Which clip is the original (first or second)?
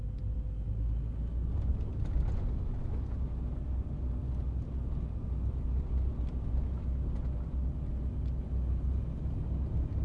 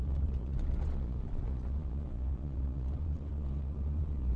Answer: first